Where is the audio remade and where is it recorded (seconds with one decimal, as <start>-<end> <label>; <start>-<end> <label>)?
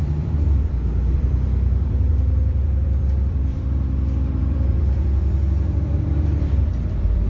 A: 0.0-7.3 remade